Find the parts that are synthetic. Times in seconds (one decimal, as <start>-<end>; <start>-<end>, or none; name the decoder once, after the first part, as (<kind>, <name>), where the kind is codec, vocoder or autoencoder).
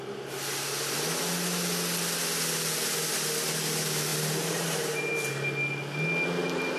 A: none